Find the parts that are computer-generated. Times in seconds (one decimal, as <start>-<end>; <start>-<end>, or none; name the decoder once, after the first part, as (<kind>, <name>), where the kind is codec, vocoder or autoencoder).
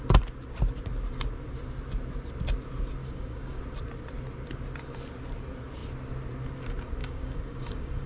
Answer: 3.0-3.6 (codec, DAC); 7.0-8.1